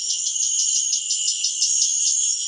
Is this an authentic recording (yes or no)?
yes